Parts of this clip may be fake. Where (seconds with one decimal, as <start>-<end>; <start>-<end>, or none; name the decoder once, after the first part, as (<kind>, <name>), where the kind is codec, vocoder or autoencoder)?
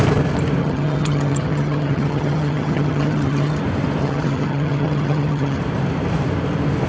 0.6-3.6 (vocoder, HiFi-GAN); 4.0-5.6